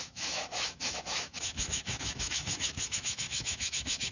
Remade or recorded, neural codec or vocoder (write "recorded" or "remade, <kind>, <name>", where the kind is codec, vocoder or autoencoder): remade, autoencoder, DAC-VAE